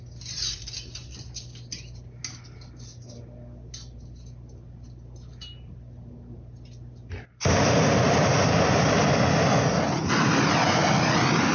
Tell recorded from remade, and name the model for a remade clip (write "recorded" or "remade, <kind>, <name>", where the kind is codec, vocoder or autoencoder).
recorded